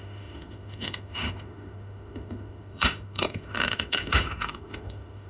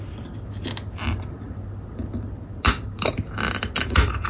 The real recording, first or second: second